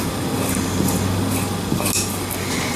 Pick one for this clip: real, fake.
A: real